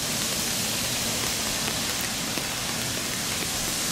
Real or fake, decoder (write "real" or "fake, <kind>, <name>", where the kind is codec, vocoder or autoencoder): real